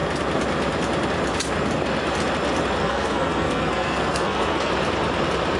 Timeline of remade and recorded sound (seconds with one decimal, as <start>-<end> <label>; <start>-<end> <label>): 0.0-2.8 recorded; 2.8-4.7 remade; 4.7-5.6 recorded